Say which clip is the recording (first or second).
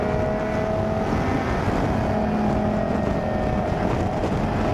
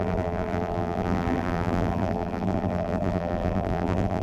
first